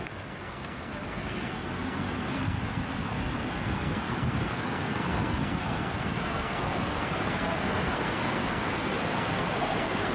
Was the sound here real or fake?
fake